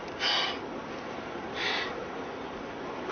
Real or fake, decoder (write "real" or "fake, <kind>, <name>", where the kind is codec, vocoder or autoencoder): real